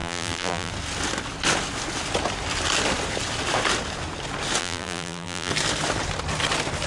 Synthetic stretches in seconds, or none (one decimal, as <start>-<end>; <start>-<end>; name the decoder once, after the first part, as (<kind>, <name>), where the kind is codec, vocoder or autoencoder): 0.0-0.7 (vocoder, BigVGAN v2); 4.6-5.5